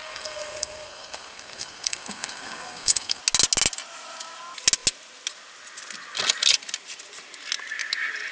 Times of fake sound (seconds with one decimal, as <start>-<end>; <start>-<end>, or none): 0.0-3.2